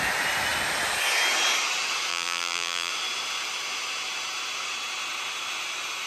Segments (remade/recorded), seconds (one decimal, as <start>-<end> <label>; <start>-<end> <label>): 0.0-2.1 recorded; 2.1-2.9 remade; 2.9-6.1 recorded